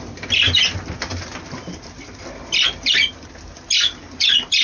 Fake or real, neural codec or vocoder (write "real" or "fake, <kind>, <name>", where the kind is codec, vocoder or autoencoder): real